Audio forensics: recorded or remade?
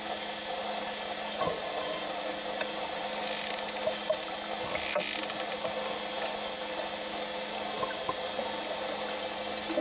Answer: recorded